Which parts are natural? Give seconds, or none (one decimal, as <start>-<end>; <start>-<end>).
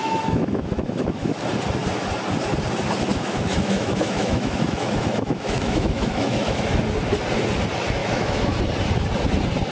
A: 1.4-3.1; 6.8-8.0; 8.6-9.7